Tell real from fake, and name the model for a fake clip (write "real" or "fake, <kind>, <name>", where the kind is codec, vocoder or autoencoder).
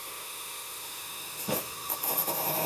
fake, autoencoder, DAC-VAE